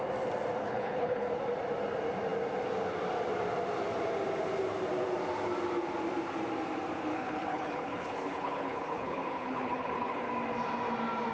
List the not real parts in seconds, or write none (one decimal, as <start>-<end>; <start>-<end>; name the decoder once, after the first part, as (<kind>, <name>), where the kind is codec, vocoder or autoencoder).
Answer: 0.6-1.4 (codec, HILCodec); 7.1-10.3